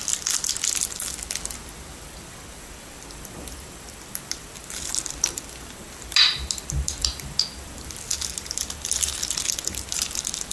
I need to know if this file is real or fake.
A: real